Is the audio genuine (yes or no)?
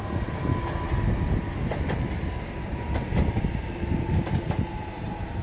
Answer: yes